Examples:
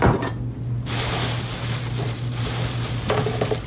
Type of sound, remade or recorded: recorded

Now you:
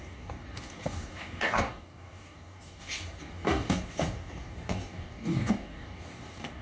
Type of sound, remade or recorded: remade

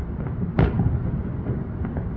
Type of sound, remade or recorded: recorded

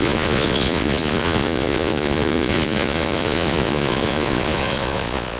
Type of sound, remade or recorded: remade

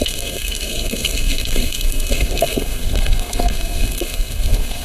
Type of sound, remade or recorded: remade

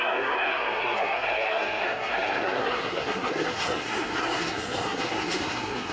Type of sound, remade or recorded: remade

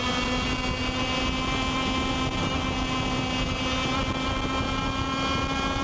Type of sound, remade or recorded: recorded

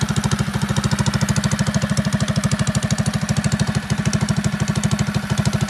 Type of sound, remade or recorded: recorded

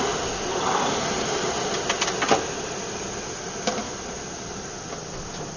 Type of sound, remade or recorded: recorded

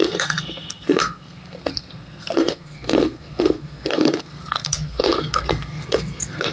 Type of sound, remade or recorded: remade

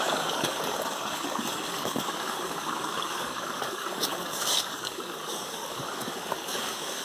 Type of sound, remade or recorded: remade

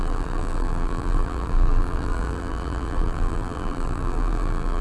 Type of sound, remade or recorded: remade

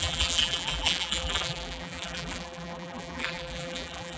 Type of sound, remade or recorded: remade